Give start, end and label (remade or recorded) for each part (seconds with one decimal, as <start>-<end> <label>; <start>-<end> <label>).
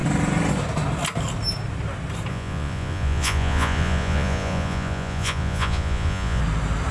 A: 0.0-2.3 recorded; 2.3-6.4 remade; 6.4-6.9 recorded